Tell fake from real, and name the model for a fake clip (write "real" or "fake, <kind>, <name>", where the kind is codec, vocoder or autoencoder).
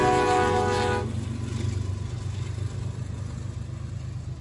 real